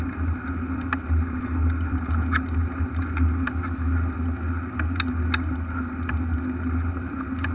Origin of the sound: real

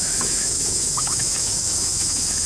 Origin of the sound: fake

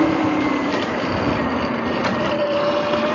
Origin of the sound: real